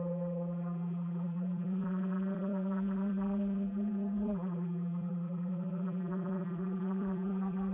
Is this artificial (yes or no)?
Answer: yes